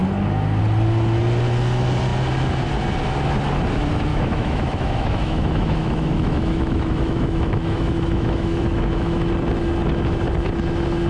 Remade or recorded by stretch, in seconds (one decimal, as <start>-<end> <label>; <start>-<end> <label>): 0.0-4.1 recorded; 4.1-9.3 remade; 9.3-11.1 recorded